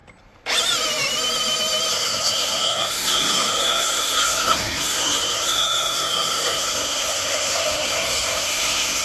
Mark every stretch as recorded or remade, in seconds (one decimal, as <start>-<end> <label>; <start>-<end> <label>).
0.0-1.9 recorded; 1.9-9.0 remade